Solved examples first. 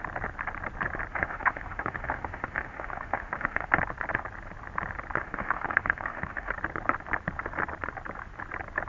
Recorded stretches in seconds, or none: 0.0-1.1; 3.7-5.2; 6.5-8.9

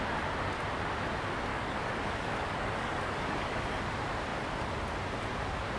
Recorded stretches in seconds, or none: 0.0-1.5; 3.8-5.8

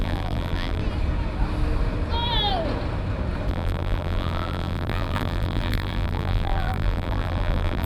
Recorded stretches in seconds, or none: 0.8-3.5

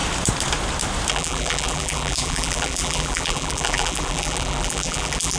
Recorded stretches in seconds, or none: 0.0-1.1

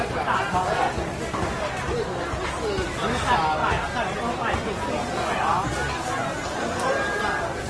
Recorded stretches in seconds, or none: 0.0-7.7

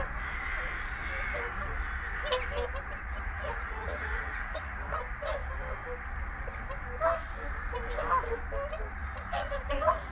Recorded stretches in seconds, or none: 0.0-3.1; 5.0-9.0